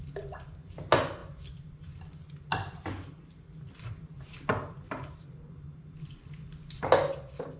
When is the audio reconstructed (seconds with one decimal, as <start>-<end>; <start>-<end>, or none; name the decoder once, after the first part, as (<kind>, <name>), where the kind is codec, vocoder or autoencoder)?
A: none